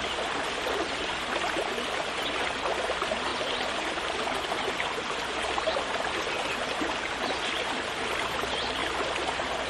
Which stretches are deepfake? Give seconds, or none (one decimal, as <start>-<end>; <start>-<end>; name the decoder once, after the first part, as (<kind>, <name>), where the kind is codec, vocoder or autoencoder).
none